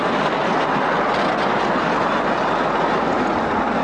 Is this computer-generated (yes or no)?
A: no